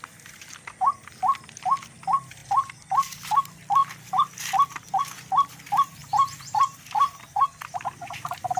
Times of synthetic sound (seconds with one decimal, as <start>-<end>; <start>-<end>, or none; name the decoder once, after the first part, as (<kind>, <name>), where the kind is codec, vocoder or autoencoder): 2.4-3.4 (vocoder, BigVGAN v2); 6.0-7.4